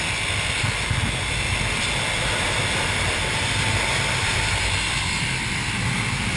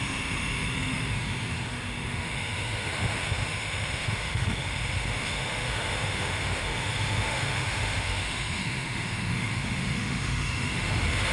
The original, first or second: first